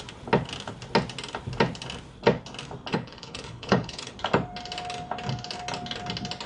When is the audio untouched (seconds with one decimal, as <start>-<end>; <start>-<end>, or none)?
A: 0.0-2.9; 4.1-6.5